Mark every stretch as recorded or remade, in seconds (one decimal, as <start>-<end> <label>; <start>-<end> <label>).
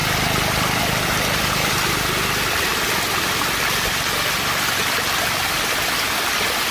0.0-6.7 recorded